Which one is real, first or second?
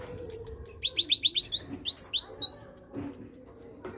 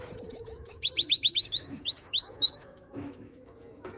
first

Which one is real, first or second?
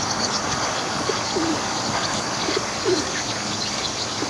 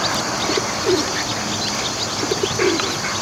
second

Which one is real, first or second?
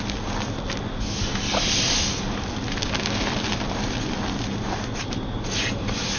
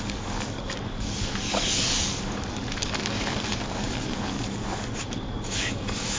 first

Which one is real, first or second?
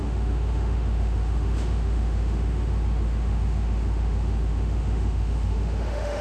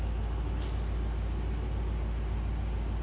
second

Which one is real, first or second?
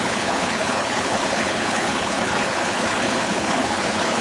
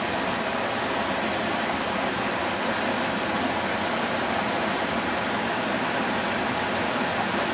second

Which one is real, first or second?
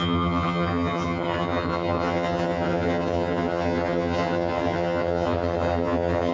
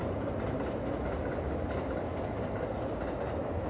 second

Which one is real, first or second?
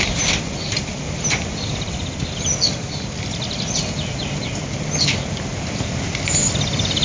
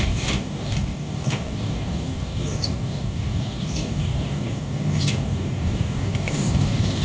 first